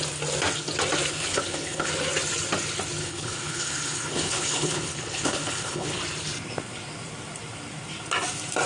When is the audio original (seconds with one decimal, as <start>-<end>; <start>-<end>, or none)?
0.0-1.1; 1.9-3.0; 6.0-8.7